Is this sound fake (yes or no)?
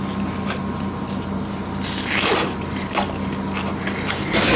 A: no